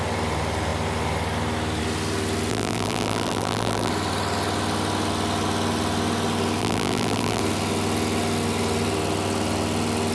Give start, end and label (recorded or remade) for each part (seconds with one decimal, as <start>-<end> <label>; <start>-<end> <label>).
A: 0.0-2.5 recorded; 2.5-3.9 remade; 3.9-6.6 recorded; 6.6-7.4 remade; 7.4-10.1 recorded